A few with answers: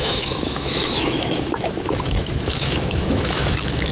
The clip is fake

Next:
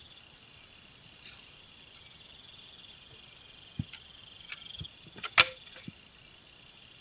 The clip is real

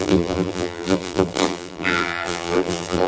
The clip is fake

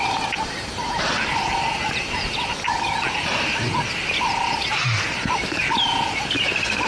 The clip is real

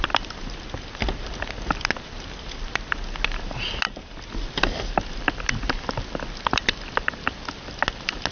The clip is real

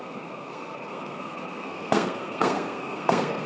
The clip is fake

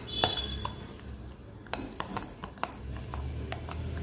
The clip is real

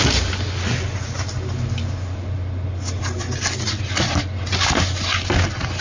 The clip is real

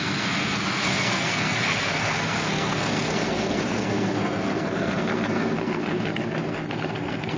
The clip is fake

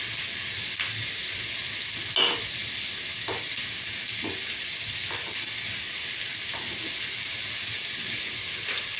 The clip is real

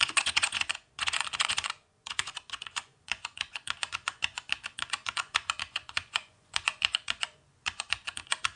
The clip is fake